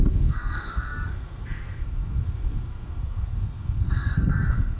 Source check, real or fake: fake